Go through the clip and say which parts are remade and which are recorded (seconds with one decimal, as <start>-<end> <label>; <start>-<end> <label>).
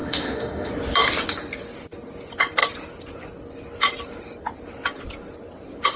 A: 0.0-0.7 remade; 0.7-6.0 recorded